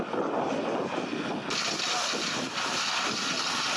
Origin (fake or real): real